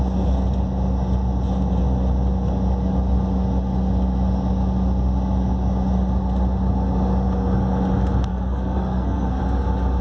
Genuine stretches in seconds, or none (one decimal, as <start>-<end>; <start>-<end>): 0.0-8.3; 9.4-10.0